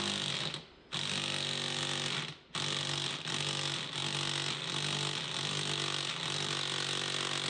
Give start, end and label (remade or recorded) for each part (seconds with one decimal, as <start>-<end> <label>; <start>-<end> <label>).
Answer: 0.0-7.5 recorded